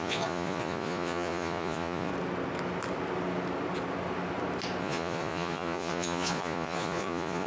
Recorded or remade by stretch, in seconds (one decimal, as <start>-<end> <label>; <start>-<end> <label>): 0.0-2.1 remade; 2.1-4.8 recorded; 4.8-7.5 remade